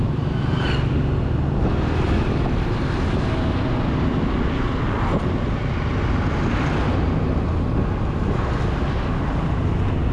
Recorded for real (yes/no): yes